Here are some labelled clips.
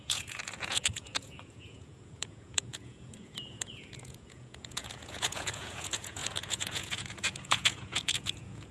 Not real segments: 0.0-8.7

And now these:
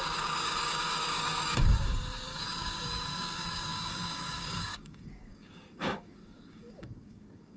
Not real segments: 0.0-7.6

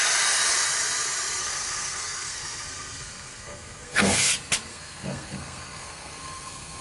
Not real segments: 1.4-4.3; 4.7-6.8